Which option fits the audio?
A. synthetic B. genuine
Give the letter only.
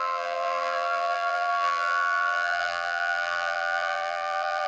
A